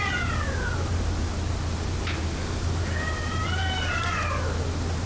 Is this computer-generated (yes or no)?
no